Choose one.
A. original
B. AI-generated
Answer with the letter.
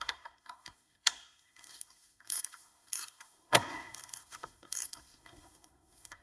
B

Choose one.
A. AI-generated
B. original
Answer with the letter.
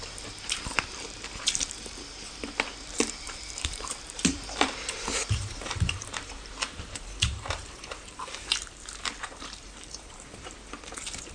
A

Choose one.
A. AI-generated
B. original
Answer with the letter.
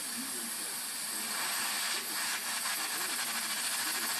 B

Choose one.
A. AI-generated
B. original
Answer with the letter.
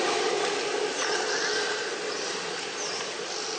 B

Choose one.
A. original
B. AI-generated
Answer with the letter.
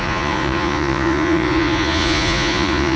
B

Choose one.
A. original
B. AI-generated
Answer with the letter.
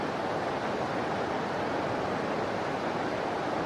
A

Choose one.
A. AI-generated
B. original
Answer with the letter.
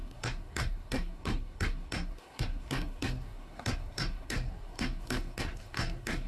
A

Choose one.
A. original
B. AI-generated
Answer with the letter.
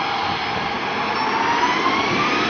A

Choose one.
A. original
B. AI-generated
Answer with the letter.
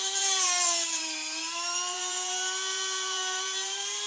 B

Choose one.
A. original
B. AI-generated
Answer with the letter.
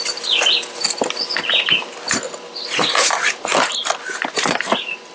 A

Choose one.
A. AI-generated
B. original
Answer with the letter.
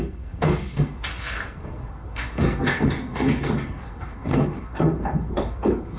A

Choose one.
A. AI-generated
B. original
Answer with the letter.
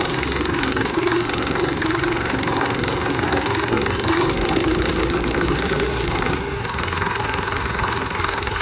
A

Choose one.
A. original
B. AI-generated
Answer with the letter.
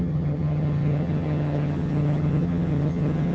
B